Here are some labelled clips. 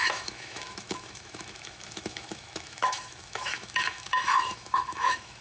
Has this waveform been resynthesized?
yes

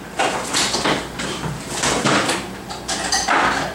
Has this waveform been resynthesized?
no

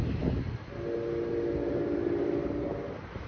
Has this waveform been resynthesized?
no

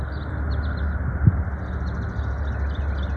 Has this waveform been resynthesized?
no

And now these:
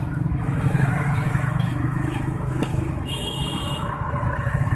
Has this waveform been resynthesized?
yes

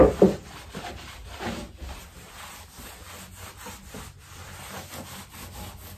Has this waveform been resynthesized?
no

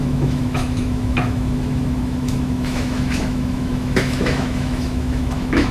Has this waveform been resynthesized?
yes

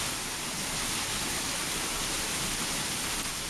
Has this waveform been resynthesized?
no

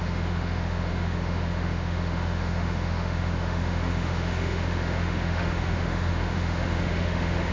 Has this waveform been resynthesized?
yes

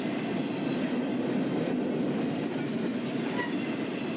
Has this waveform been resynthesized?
no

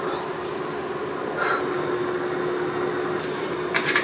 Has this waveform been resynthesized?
no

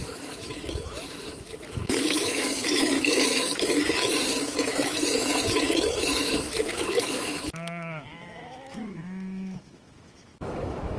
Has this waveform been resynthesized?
yes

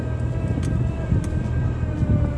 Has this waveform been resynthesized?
no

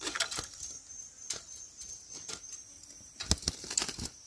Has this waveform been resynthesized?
no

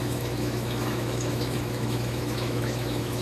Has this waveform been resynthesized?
yes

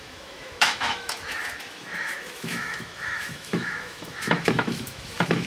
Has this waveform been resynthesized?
yes